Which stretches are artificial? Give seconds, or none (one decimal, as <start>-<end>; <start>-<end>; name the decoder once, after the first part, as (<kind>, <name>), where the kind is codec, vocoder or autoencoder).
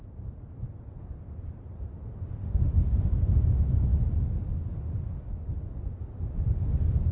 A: 1.9-3.1 (autoencoder, DAC-VAE)